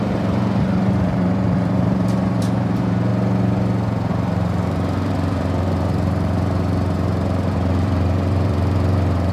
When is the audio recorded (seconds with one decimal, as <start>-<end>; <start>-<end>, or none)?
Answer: 3.1-4.1